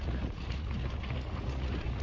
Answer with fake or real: fake